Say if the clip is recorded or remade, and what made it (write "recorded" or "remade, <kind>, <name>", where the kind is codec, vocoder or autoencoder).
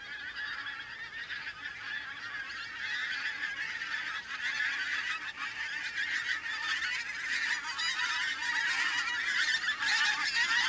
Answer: recorded